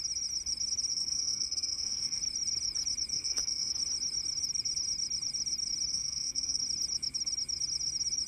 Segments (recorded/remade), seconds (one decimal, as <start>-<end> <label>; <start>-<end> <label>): 0.0-0.9 recorded; 0.9-2.2 remade; 2.2-3.1 recorded; 3.1-3.7 remade; 3.7-5.9 recorded; 5.9-6.6 remade; 6.6-8.3 recorded